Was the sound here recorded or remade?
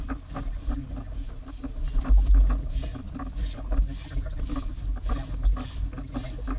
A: recorded